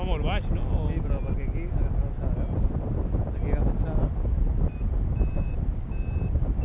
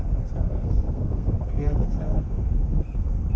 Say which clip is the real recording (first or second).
first